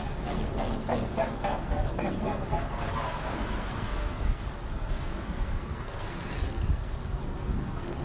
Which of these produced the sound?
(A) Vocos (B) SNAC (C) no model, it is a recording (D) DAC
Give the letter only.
B